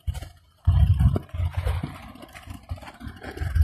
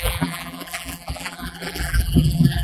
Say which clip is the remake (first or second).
second